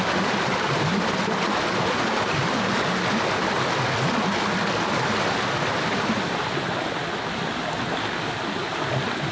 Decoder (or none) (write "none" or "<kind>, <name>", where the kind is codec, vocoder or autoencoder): none